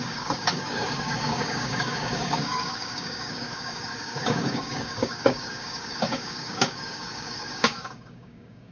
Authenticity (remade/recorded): remade